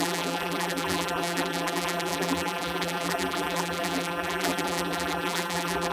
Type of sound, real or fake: fake